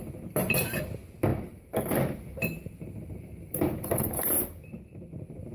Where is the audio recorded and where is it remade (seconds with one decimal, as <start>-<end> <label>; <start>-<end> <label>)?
0.0-1.3 recorded; 1.3-4.6 remade; 4.6-5.5 recorded